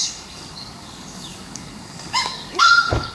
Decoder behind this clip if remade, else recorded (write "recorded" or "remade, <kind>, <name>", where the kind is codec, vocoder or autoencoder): remade, codec, DAC